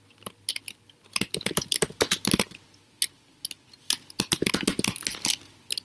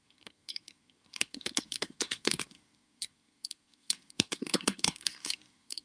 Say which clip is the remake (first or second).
second